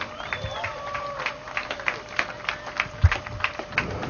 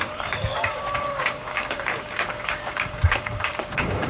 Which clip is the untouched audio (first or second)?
first